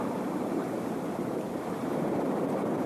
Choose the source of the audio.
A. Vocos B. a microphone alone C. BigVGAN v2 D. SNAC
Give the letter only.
C